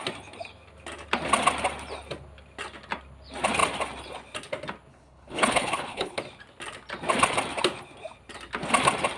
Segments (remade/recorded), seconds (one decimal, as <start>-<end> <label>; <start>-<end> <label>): 0.0-4.9 recorded; 4.9-6.2 remade; 6.2-9.2 recorded